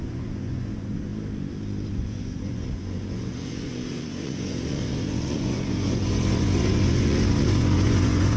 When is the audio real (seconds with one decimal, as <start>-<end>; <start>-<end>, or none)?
1.1-1.9